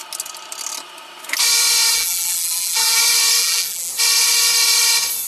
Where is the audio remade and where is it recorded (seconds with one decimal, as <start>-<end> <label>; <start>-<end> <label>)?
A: 0.0-1.9 recorded; 1.9-3.0 remade; 3.0-3.4 recorded; 3.4-3.9 remade; 3.9-5.3 recorded

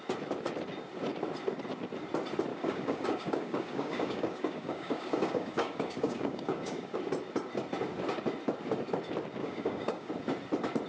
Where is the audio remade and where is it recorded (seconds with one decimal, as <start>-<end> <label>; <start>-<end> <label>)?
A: 0.0-2.5 recorded; 2.5-7.0 remade; 7.0-9.4 recorded; 9.4-10.1 remade; 10.1-10.9 recorded

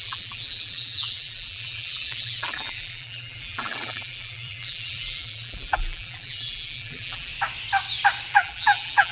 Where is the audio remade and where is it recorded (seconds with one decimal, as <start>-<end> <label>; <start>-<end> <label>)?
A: 0.0-7.3 remade; 7.3-8.3 recorded; 8.3-9.1 remade

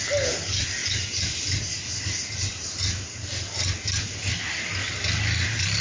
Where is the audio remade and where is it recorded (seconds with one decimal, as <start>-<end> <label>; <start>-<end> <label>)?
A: 0.0-5.8 recorded

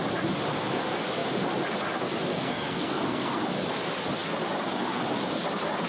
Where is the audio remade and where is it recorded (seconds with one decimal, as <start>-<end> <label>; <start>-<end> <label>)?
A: 0.0-2.3 recorded; 2.3-3.4 remade; 3.4-5.9 recorded